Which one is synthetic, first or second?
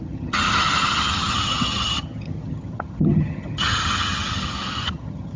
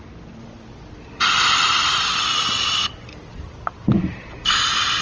first